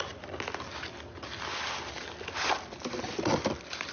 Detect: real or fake real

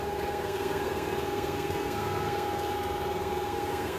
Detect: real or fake fake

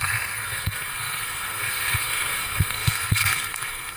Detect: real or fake fake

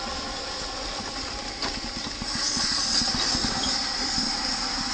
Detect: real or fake real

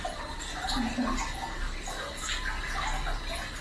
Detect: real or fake real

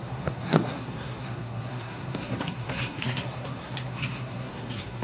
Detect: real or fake fake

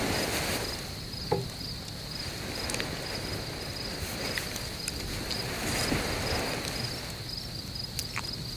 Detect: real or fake real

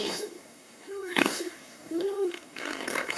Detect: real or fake fake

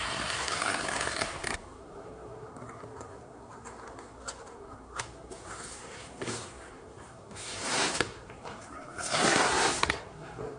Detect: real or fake fake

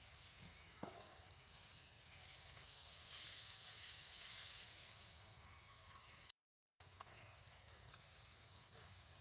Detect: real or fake fake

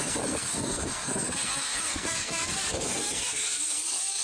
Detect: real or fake fake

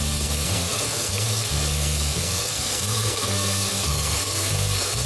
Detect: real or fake fake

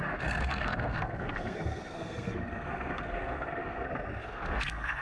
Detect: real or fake fake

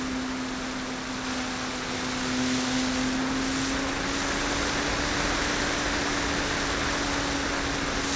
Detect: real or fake real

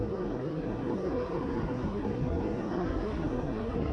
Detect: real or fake fake